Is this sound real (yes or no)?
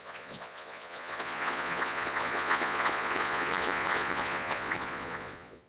no